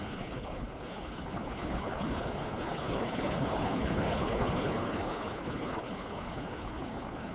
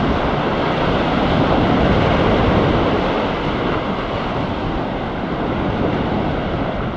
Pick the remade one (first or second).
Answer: first